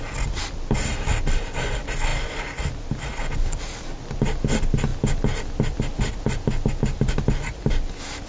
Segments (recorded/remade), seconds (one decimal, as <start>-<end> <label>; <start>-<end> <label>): 0.0-8.3 recorded

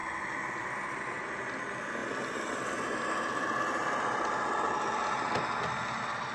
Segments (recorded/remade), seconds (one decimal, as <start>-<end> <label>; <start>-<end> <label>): 0.0-6.3 recorded

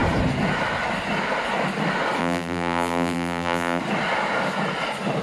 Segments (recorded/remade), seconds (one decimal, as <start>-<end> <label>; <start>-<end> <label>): 0.0-2.2 recorded; 2.2-3.8 remade; 3.8-5.2 recorded

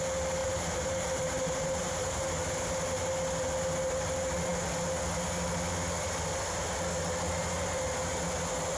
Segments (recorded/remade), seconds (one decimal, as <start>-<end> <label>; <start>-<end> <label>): 0.0-0.4 recorded; 0.4-2.3 remade; 2.3-8.8 recorded

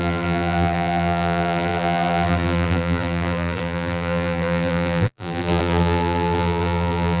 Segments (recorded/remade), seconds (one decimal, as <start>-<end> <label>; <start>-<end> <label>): 0.0-7.2 remade

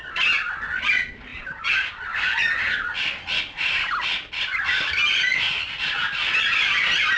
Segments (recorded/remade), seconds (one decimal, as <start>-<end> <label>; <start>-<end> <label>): 0.0-1.3 recorded; 1.3-1.9 remade; 1.9-7.2 recorded

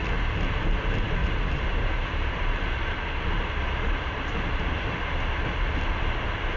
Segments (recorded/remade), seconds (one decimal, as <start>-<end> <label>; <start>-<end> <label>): 0.0-1.2 recorded; 1.2-4.6 remade; 4.6-6.6 recorded

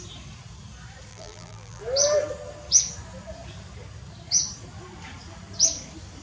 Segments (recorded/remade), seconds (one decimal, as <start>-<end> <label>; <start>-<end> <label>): 0.0-1.1 recorded; 1.1-1.8 remade; 1.8-6.2 recorded